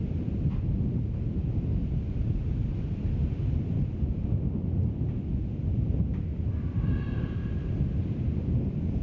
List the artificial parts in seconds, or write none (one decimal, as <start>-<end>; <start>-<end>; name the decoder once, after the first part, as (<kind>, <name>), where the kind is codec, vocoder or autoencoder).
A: none